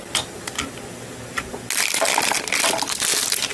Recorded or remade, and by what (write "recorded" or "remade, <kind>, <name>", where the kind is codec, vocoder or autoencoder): recorded